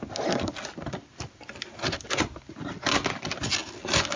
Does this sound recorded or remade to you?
recorded